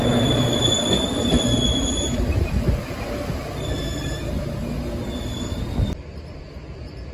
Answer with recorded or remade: recorded